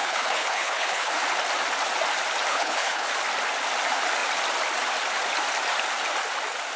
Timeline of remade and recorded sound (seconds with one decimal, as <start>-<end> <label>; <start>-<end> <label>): 0.0-1.1 remade; 1.1-2.5 recorded; 2.5-3.1 remade; 3.1-6.8 recorded